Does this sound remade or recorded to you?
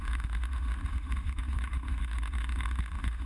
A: remade